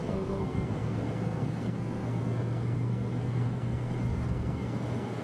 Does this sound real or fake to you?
fake